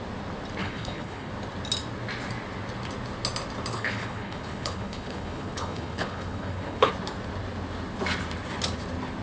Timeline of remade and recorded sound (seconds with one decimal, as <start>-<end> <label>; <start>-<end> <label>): 0.0-0.6 recorded; 0.6-1.3 remade; 1.3-3.7 recorded; 3.7-6.9 remade; 6.9-9.2 recorded